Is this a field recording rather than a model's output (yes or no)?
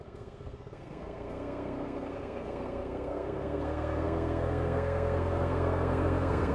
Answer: no